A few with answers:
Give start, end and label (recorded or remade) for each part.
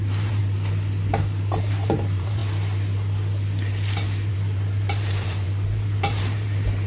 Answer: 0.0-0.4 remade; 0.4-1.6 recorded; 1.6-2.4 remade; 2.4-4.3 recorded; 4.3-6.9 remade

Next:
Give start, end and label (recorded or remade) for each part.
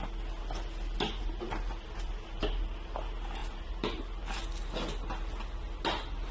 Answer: 0.0-1.2 recorded; 1.2-2.4 remade; 2.4-3.4 recorded; 3.4-4.4 remade; 4.4-6.3 recorded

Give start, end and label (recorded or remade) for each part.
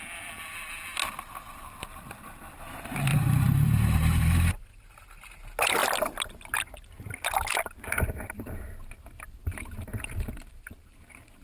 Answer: 0.0-3.1 recorded; 3.1-4.7 remade; 4.7-5.8 recorded; 5.8-6.6 remade; 6.6-9.4 recorded; 9.4-10.7 remade; 10.7-11.4 recorded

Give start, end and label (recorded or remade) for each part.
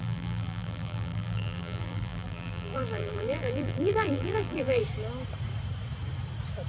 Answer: 0.0-4.8 remade; 4.8-6.7 recorded